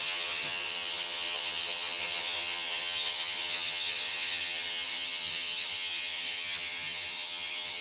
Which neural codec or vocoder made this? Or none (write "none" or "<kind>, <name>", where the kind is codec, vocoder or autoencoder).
vocoder, HiFi-GAN